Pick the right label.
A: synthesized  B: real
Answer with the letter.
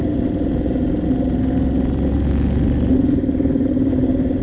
B